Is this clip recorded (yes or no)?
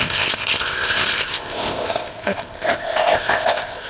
no